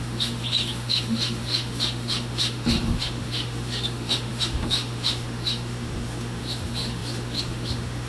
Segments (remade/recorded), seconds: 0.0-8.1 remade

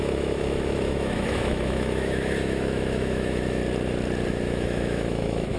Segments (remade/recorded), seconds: 0.0-3.6 remade; 3.6-4.3 recorded; 4.3-5.6 remade

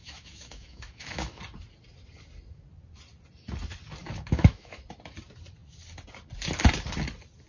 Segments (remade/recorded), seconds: 0.0-1.4 remade; 1.4-4.0 recorded; 4.0-4.8 remade; 4.8-7.5 recorded

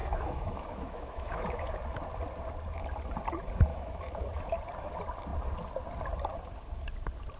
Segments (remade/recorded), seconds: 0.0-1.7 remade; 1.7-3.7 recorded; 3.7-4.6 remade; 4.6-7.4 recorded

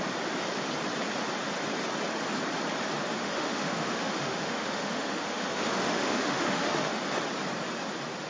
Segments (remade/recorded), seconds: 0.0-3.2 recorded; 3.2-7.0 remade; 7.0-8.3 recorded

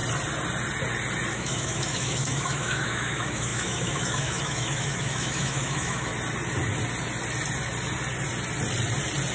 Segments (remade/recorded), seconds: 0.0-1.3 recorded; 1.3-6.1 remade; 6.1-9.3 recorded

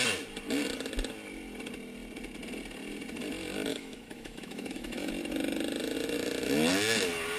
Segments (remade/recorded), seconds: 0.0-3.7 recorded; 3.7-5.1 remade; 5.1-7.4 recorded

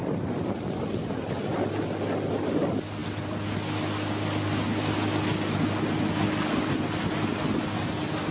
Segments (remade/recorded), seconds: 0.0-8.3 recorded